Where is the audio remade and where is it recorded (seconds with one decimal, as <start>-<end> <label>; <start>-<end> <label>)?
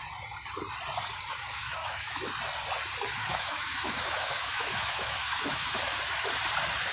0.0-1.3 recorded; 1.3-2.3 remade; 2.3-3.2 recorded; 3.2-6.0 remade; 6.0-6.9 recorded